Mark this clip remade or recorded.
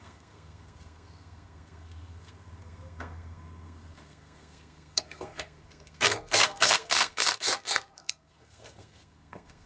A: remade